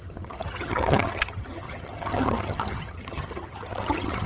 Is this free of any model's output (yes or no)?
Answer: no